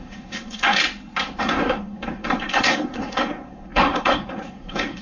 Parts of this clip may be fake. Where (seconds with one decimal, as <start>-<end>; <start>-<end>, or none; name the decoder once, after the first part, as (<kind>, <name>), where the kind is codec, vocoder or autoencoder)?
0.0-0.8 (codec, SNAC); 1.4-5.0